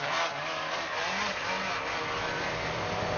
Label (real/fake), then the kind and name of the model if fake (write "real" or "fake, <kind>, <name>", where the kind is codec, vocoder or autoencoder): fake, vocoder, BigVGAN v2